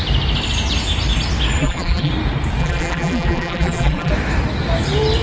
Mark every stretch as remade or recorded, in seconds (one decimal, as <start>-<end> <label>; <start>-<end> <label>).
0.0-1.6 recorded; 1.6-2.1 remade; 2.1-2.6 recorded; 2.6-4.1 remade; 4.1-5.2 recorded